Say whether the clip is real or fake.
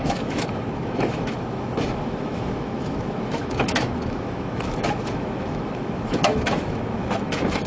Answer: fake